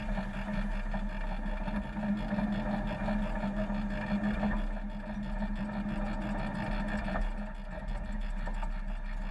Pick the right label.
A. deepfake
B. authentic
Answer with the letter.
B